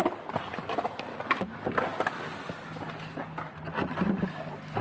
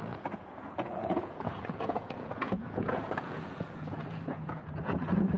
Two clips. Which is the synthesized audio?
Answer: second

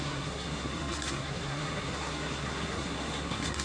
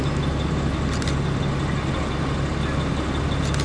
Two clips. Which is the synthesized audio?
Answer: first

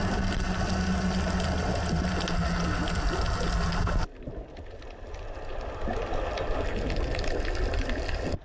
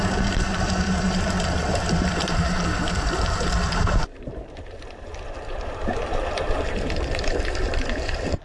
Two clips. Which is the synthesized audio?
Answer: second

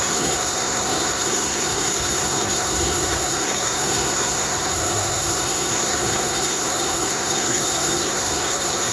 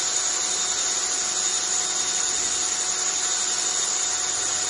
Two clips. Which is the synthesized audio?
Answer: first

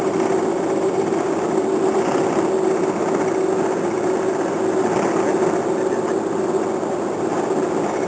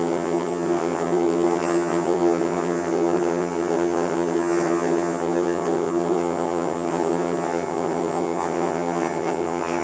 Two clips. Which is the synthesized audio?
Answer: second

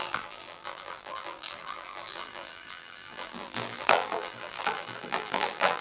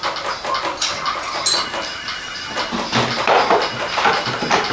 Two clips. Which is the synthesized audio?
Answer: first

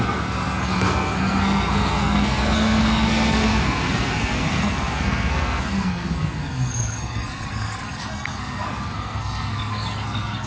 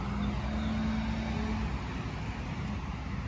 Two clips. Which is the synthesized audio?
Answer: first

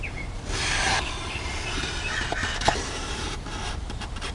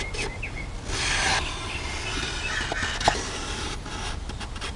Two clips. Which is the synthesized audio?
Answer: first